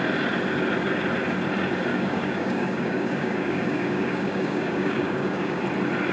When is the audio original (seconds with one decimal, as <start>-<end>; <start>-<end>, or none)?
0.0-1.9; 5.6-6.1